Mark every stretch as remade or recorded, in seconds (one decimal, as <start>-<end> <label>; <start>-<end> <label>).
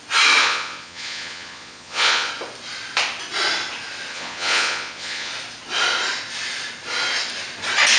0.0-0.4 recorded; 0.4-2.3 remade; 2.3-4.1 recorded; 4.1-5.3 remade; 5.3-8.0 recorded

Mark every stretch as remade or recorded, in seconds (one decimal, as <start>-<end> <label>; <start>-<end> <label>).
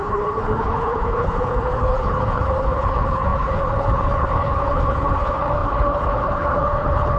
0.0-7.2 remade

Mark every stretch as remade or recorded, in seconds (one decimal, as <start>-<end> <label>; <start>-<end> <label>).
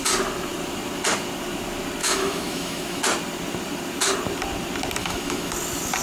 0.0-2.0 recorded; 2.0-3.0 remade; 3.0-5.0 recorded; 5.0-5.5 remade; 5.5-6.0 recorded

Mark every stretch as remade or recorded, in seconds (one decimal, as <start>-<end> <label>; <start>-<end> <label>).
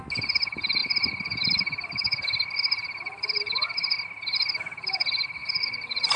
0.0-5.4 recorded; 5.4-6.2 remade